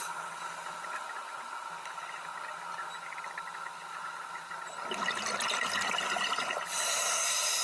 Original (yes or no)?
yes